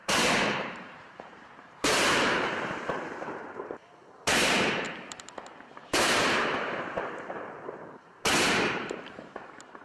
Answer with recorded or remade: remade